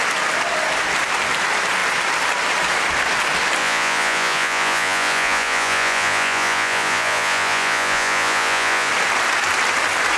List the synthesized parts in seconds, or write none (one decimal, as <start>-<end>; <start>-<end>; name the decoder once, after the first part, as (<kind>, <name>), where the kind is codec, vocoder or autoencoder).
3.6-8.9 (vocoder, Vocos)